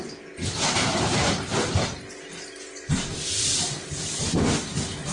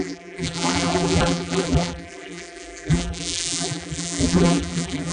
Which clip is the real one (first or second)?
first